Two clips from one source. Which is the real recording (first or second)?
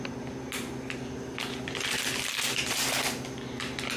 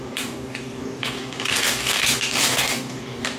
first